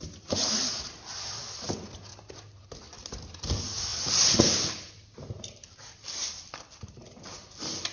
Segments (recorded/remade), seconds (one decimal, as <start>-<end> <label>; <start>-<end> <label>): 0.0-2.1 recorded; 2.1-2.6 remade; 2.6-3.9 recorded; 3.9-4.9 remade; 4.9-6.2 recorded; 6.2-7.2 remade; 7.2-7.9 recorded